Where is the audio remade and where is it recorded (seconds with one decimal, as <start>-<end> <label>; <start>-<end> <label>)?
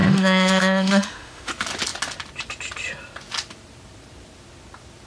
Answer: 0.0-1.5 remade; 1.5-5.1 recorded